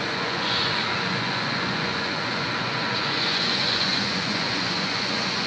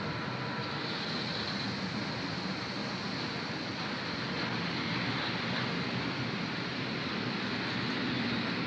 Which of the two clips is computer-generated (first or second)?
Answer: first